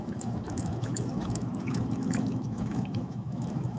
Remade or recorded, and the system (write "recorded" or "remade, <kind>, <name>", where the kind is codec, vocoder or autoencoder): remade, autoencoder, DAC-VAE